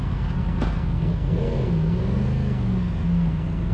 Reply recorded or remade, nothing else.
remade